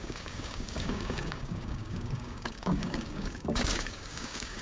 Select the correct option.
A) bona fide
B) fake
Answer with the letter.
B